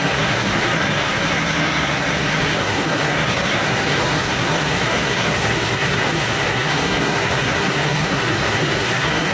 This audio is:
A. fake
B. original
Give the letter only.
A